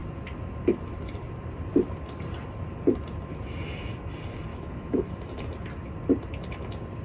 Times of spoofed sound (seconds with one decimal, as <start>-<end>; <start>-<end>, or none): 4.5-5.1